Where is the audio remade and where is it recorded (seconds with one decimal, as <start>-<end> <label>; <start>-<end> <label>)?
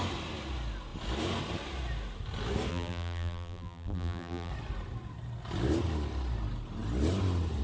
0.0-2.7 recorded; 2.7-4.5 remade; 4.5-7.6 recorded